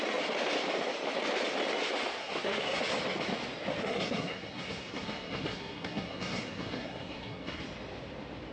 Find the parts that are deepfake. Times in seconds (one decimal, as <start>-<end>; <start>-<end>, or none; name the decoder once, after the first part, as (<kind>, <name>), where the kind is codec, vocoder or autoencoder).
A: 2.2-2.8 (codec, SNAC); 3.8-7.6